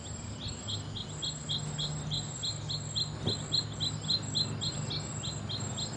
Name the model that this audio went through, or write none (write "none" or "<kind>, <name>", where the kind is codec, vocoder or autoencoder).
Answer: none